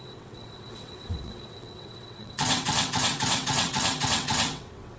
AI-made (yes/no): yes